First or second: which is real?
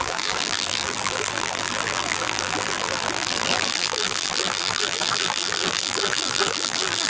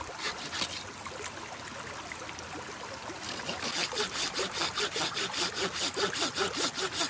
second